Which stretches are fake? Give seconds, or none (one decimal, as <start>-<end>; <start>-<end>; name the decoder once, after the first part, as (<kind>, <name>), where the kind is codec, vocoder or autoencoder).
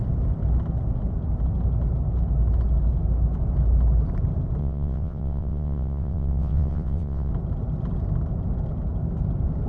4.6-7.3 (vocoder, WaveNeXt)